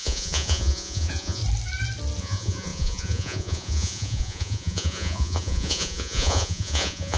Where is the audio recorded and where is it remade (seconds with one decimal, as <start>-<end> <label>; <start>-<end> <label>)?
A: 0.0-1.4 remade; 1.4-2.2 recorded; 2.2-7.2 remade